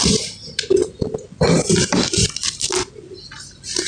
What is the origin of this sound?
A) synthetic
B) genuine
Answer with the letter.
B